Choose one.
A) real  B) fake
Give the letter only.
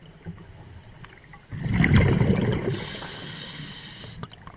A